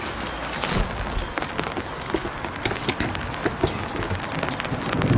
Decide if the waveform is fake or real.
real